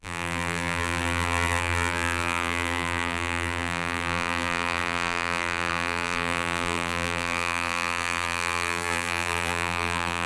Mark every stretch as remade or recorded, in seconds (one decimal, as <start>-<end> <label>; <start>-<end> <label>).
0.0-10.3 remade